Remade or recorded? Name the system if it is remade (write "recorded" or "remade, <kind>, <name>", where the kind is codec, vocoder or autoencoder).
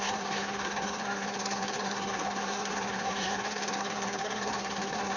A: remade, codec, SNAC